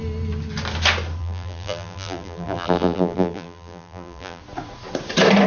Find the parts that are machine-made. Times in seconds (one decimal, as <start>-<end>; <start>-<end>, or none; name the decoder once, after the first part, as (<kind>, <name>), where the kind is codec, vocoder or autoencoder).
1.2-4.4 (vocoder, BigVGAN v2)